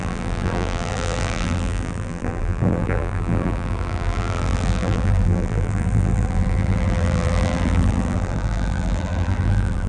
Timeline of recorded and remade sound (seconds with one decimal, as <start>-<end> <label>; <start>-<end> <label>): 0.0-9.9 remade